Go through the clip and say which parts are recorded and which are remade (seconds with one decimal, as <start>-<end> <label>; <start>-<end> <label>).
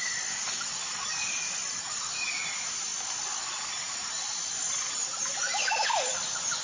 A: 0.0-6.6 recorded